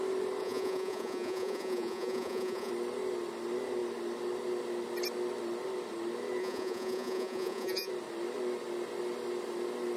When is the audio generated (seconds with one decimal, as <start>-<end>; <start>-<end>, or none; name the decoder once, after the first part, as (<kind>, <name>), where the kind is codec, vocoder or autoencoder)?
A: 0.4-2.7 (vocoder, Vocos); 6.4-7.9

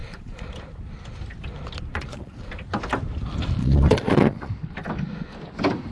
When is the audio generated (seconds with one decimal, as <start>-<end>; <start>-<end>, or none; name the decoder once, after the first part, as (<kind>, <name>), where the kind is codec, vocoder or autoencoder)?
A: 0.0-0.5 (vocoder, Vocos); 1.9-2.5; 3.6-4.5

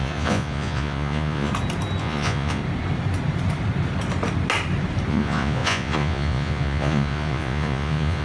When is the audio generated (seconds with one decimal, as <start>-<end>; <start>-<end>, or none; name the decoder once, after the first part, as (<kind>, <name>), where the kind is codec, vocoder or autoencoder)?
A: 0.0-1.5 (vocoder, Vocos); 2.0-2.6; 5.1-8.2

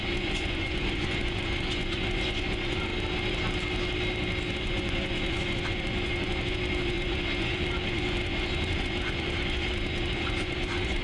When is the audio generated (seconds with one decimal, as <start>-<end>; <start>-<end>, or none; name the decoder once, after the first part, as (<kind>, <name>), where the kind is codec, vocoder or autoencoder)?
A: 0.0-2.9 (vocoder, Vocos); 4.5-11.0

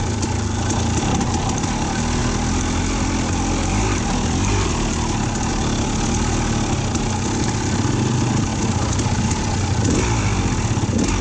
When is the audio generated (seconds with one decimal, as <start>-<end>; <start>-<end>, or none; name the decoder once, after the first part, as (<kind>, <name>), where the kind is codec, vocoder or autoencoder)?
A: none

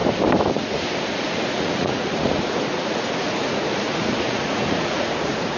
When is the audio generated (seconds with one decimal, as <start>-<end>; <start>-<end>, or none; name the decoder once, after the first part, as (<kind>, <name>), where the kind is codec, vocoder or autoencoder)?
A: 0.5-5.6 (vocoder, Vocos)